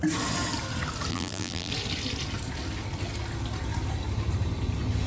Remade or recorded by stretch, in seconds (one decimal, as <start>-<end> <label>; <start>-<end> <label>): 0.0-1.1 recorded; 1.1-1.7 remade; 1.7-5.1 recorded